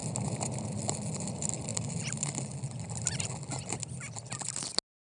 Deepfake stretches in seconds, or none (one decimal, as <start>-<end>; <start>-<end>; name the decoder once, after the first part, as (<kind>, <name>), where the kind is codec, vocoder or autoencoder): none